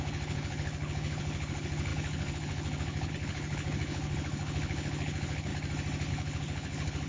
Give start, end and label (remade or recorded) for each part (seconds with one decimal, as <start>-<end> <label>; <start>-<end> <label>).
0.0-5.5 remade; 5.5-6.1 recorded; 6.1-7.1 remade